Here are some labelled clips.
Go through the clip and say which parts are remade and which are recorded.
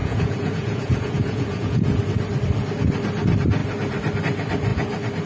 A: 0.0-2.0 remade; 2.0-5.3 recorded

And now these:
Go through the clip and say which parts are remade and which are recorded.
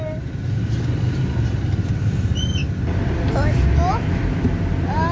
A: 0.0-5.1 recorded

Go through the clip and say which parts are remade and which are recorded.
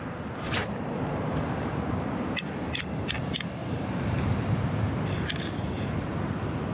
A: 0.0-0.6 recorded; 0.6-2.9 remade; 2.9-3.6 recorded; 3.6-4.3 remade; 4.3-6.7 recorded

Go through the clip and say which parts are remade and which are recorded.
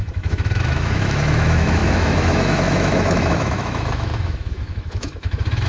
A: 0.0-5.7 remade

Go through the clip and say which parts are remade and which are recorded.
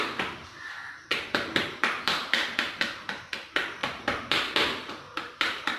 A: 0.0-0.4 recorded; 0.4-3.2 remade; 3.2-3.8 recorded; 3.8-5.8 remade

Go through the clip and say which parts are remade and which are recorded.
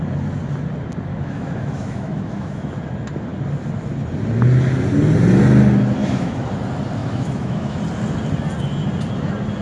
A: 0.0-1.1 recorded; 1.1-2.7 remade; 2.7-6.0 recorded; 6.0-6.5 remade; 6.5-7.0 recorded; 7.0-7.8 remade; 7.8-9.6 recorded